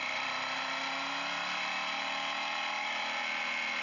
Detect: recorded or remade recorded